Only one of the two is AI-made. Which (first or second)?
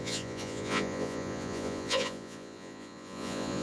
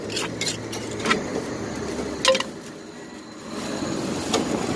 first